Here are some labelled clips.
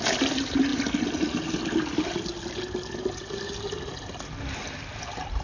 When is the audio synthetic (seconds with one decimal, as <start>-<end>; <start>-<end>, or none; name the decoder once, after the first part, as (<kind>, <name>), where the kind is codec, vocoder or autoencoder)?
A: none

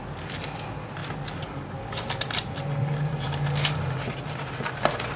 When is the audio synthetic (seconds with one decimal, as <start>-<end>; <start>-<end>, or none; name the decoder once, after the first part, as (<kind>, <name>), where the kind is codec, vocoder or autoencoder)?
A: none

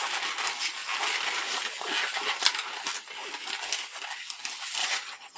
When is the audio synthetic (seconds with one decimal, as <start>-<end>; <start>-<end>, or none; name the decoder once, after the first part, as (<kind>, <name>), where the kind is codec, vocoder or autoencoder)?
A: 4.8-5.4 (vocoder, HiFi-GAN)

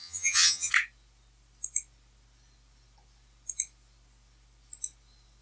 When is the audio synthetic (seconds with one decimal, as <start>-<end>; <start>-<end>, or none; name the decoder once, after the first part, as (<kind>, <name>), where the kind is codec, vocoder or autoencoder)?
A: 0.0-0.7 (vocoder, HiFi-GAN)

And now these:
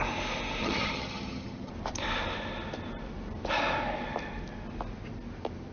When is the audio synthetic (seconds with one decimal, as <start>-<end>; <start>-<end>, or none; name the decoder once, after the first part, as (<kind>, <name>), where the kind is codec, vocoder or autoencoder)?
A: 0.6-1.7 (vocoder, HiFi-GAN)